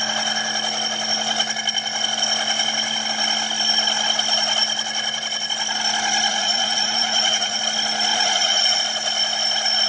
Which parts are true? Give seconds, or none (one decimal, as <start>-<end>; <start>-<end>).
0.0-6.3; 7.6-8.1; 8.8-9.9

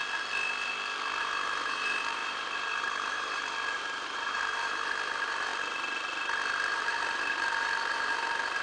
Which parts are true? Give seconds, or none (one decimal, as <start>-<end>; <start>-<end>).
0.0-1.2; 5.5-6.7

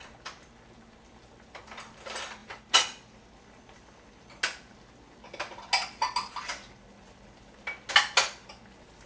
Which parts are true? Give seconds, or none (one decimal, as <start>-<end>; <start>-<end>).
0.0-9.1

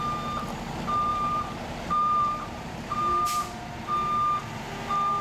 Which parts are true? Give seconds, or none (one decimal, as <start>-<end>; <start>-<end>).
0.0-1.1; 3.6-5.2

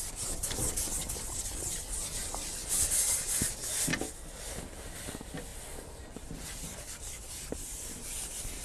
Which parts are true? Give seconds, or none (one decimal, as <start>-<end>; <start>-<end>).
2.6-3.4